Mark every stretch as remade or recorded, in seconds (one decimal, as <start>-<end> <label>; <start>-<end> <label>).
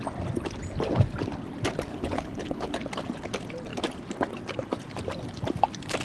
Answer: 0.0-1.9 recorded; 1.9-2.7 remade; 2.7-6.0 recorded